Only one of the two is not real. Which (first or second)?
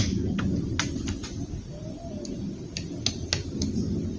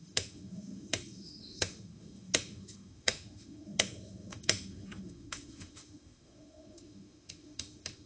second